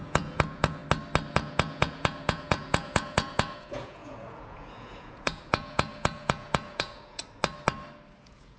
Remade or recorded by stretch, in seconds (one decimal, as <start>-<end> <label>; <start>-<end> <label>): 0.0-0.8 remade; 0.8-1.3 recorded; 1.3-7.2 remade; 7.2-8.2 recorded; 8.2-8.6 remade